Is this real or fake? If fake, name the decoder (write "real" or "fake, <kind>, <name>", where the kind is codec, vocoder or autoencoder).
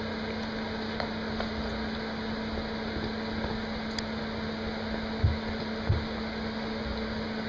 real